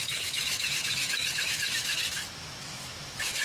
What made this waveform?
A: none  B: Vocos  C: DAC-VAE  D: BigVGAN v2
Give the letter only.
C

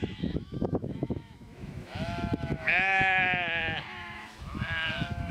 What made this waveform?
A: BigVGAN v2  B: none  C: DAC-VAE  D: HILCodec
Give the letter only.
C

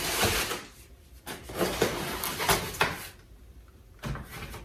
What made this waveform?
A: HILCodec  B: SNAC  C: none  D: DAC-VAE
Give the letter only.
C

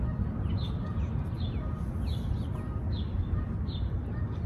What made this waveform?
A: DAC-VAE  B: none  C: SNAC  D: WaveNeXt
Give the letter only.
B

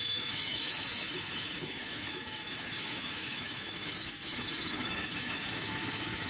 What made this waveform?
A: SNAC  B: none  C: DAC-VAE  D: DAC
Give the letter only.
C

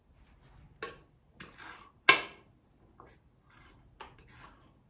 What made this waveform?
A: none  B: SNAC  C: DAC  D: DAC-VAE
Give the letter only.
A